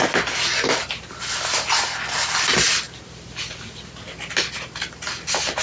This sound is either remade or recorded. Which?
recorded